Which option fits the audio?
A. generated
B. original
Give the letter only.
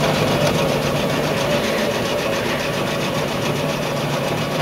A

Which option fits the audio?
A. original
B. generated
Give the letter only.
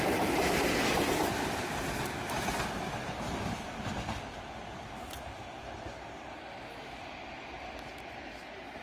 A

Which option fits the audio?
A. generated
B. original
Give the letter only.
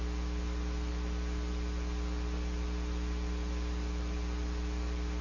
B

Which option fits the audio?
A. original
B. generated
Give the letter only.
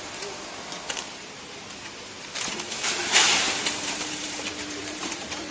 B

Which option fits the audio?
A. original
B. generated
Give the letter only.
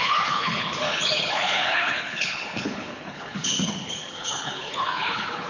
B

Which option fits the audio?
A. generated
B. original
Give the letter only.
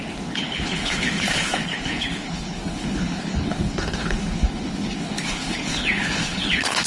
A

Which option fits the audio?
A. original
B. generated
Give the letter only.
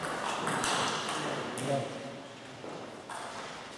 A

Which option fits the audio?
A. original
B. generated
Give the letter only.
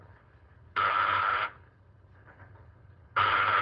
B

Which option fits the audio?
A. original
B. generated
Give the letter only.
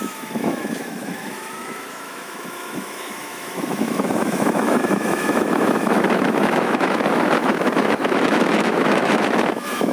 B